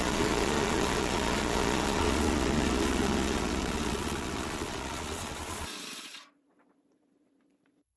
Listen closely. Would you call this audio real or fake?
fake